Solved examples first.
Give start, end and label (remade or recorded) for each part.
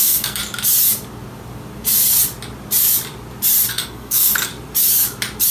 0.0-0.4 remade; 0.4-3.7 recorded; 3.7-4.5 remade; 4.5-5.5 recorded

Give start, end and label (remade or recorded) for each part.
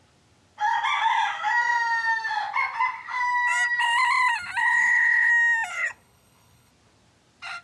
0.0-4.6 recorded; 4.6-5.3 remade; 5.3-5.7 recorded; 5.7-6.7 remade; 6.7-7.6 recorded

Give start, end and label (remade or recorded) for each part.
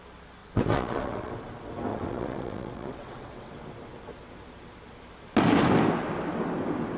0.0-0.4 recorded; 0.4-1.3 remade; 1.3-1.9 recorded; 1.9-3.5 remade; 3.5-7.0 recorded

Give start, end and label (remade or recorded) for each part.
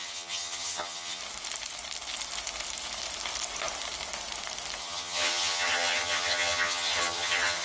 0.0-1.2 remade; 1.2-4.8 recorded; 4.8-7.6 remade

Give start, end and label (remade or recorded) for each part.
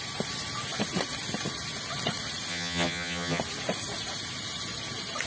0.0-2.5 recorded; 2.5-3.4 remade; 3.4-5.3 recorded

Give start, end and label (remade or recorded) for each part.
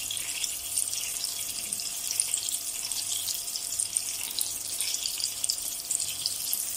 0.0-3.1 remade; 3.1-6.8 recorded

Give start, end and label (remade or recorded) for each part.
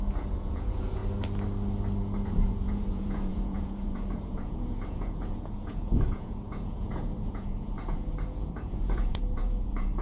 0.0-1.0 remade; 1.0-2.0 recorded; 2.0-10.0 remade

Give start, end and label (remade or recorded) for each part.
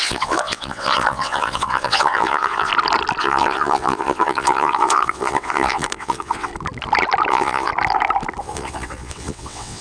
0.0-2.7 remade; 2.7-3.2 recorded; 3.2-6.5 remade; 6.5-7.3 recorded; 7.3-7.7 remade; 7.7-8.4 recorded; 8.4-9.8 remade